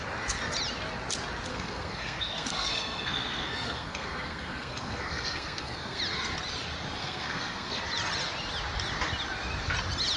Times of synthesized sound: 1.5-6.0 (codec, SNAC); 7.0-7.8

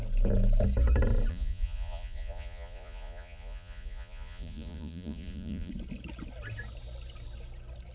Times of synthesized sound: 1.3-5.7 (vocoder, Vocos)

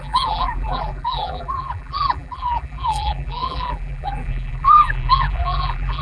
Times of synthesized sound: 0.0-6.0 (vocoder, BigVGAN v2)